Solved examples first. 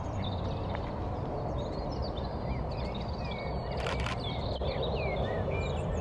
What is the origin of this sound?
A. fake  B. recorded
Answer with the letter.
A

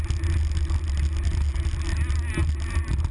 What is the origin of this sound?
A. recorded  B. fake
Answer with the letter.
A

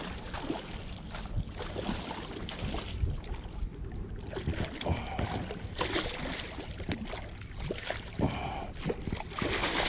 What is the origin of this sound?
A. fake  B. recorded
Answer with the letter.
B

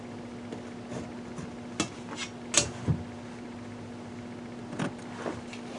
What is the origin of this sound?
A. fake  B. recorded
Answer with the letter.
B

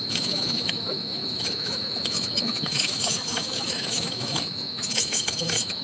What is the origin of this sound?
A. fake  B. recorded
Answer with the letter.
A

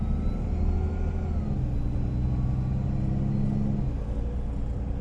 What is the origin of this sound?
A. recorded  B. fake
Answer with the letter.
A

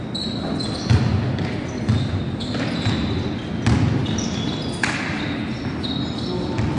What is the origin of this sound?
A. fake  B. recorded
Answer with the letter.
B